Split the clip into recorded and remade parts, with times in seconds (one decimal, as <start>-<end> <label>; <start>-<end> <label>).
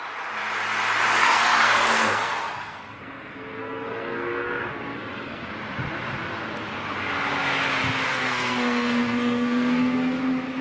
0.0-1.2 recorded; 1.2-5.5 remade; 5.5-8.1 recorded; 8.1-10.2 remade; 10.2-10.6 recorded